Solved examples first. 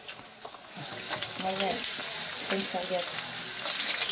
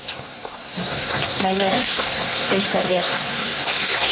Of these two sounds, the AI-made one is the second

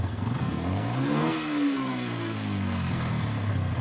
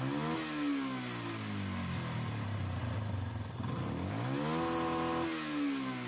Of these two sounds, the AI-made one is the first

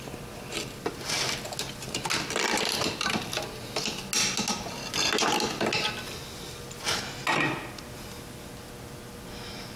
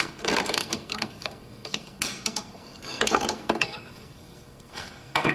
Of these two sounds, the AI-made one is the second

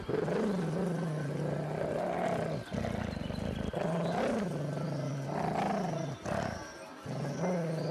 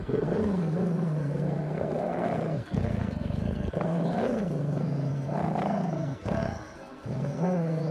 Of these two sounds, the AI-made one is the second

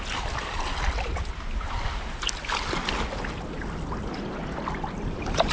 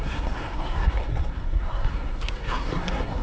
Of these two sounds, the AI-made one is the second